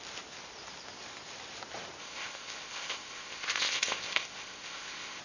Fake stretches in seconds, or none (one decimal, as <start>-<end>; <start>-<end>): 2.0-5.2